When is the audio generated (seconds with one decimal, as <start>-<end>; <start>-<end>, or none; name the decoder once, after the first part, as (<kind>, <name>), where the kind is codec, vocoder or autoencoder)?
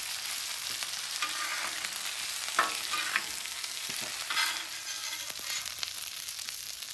3.1-3.9 (codec, SNAC)